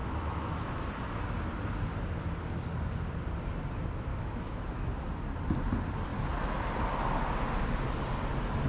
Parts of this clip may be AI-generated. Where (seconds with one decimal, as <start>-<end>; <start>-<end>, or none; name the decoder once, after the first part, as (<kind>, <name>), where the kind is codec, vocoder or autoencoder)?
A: 0.0-0.8 (autoencoder, DAC-VAE); 4.1-4.9